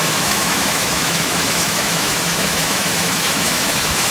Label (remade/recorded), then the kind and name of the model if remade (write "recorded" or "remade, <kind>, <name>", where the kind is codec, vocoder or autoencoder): remade, autoencoder, DAC-VAE